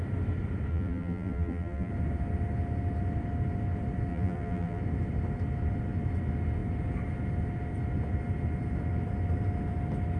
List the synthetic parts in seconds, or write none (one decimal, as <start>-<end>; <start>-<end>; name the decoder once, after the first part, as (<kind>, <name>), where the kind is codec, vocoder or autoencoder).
0.7-1.9 (vocoder, BigVGAN v2); 4.1-4.8